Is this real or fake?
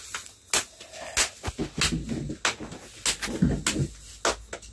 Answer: real